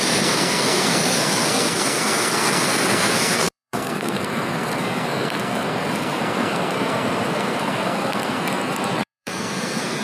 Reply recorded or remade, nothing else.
remade